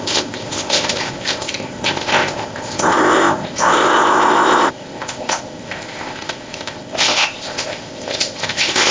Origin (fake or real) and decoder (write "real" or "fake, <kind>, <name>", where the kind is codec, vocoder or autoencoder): fake, codec, ZipCodec